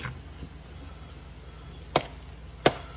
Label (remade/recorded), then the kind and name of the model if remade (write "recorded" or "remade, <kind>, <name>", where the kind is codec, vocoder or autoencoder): recorded